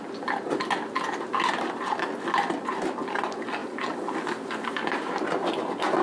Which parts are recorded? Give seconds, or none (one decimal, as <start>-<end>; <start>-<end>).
0.0-6.0